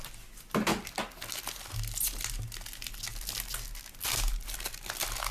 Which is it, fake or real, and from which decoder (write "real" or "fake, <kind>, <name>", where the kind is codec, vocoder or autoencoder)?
real